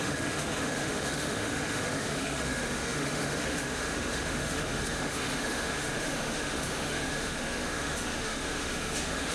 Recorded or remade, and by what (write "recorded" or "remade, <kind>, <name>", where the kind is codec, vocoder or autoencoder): remade, autoencoder, DAC-VAE